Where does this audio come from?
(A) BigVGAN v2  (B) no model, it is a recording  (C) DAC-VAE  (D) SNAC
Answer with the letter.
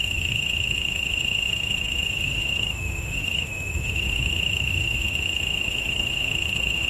C